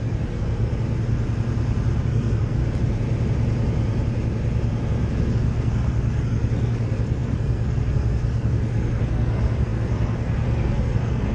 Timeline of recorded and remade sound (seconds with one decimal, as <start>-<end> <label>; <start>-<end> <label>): 0.0-0.7 remade; 0.7-2.1 recorded; 2.1-2.6 remade; 2.6-5.2 recorded; 5.2-11.3 remade